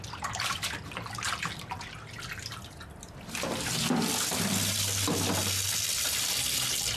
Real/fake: real